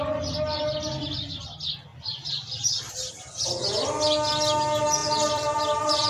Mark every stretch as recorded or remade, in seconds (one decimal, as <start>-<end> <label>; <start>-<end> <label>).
0.0-5.0 recorded; 5.0-6.1 remade